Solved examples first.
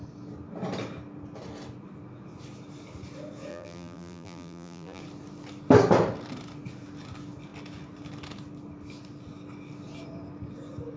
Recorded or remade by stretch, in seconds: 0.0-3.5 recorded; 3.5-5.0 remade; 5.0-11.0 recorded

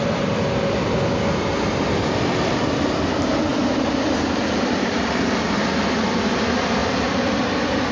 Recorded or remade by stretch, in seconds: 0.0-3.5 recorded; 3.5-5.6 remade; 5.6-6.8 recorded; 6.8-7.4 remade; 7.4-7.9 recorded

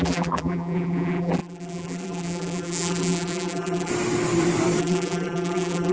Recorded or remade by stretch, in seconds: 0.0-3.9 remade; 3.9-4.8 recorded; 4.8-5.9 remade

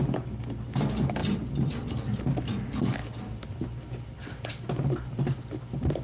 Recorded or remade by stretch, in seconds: 0.0-1.2 recorded; 1.2-1.9 remade; 1.9-6.0 recorded